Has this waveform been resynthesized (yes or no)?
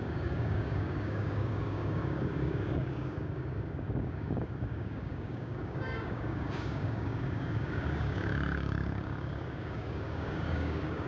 yes